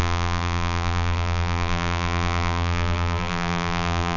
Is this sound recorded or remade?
remade